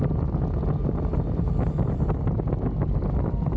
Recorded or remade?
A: recorded